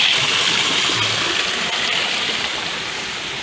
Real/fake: real